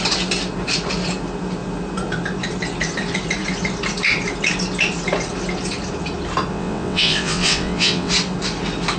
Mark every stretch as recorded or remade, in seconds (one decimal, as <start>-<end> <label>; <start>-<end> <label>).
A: 0.0-6.5 recorded; 6.5-8.1 remade; 8.1-9.0 recorded